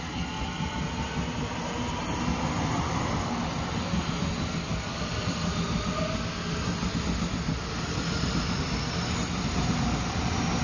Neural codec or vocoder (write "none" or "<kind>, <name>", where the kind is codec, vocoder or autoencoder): none